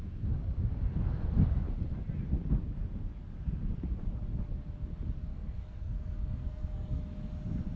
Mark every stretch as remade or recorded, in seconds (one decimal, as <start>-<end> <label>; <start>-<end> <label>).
0.0-5.3 recorded; 5.3-7.0 remade; 7.0-7.8 recorded